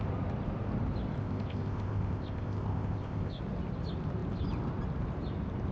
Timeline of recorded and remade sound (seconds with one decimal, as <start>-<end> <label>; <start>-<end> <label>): 0.0-1.2 recorded; 1.2-3.4 remade; 3.4-5.7 recorded